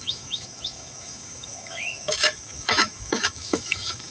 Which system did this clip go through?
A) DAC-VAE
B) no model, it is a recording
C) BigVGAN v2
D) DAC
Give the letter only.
A